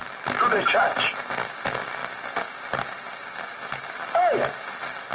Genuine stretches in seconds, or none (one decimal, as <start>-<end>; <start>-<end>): 0.0-5.1